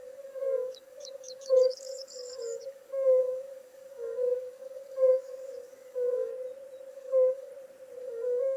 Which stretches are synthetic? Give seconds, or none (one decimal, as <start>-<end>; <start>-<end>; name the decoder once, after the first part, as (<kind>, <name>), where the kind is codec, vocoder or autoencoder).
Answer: 0.0-6.3 (codec, DAC); 6.9-7.5; 8.0-8.6